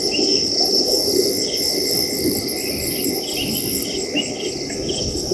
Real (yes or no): no